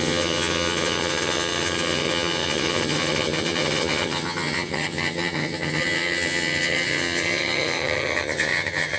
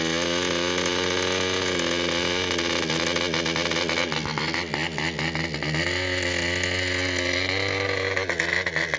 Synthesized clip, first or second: first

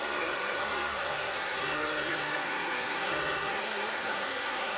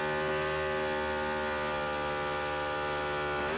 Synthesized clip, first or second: first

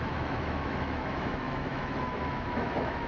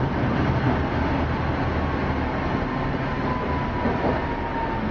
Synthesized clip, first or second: first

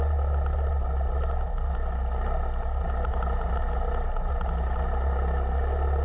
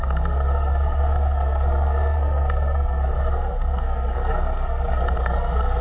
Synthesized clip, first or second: second